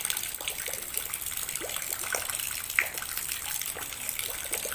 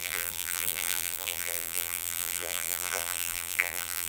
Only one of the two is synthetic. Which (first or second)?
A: second